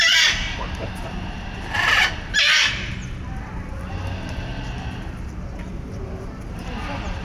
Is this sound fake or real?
real